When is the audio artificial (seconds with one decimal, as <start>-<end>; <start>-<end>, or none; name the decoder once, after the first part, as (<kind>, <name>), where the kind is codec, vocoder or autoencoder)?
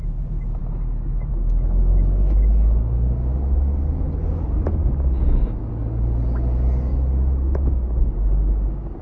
none